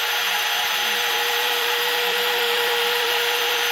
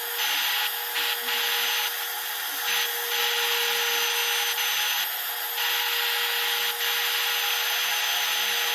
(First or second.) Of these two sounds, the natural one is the second